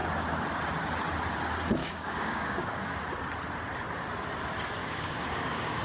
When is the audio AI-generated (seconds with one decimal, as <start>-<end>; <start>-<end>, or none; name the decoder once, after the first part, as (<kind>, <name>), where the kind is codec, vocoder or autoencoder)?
1.8-3.0 (codec, DAC); 4.8-5.8